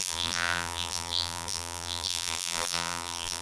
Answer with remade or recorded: remade